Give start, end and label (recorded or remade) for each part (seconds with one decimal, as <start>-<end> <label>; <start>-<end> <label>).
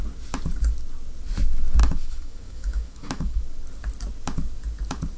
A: 0.0-1.8 recorded; 1.8-3.4 remade; 3.4-5.2 recorded